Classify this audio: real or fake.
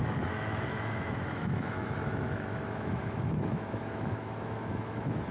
fake